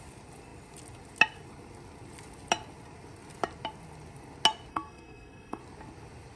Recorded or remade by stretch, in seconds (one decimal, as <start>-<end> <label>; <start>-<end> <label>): 0.0-4.7 recorded; 4.7-5.6 remade; 5.6-6.4 recorded